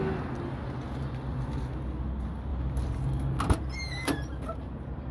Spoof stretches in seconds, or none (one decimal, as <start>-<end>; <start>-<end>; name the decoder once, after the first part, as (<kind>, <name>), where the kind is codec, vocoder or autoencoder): none